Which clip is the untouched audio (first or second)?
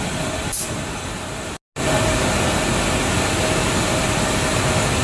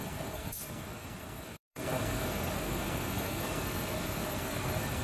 first